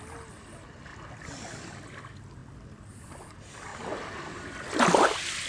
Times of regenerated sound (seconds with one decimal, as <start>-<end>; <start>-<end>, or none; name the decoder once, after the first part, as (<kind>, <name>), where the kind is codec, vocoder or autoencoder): none